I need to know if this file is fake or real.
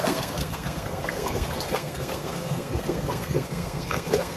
fake